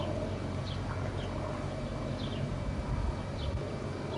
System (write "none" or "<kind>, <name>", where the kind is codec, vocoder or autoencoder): none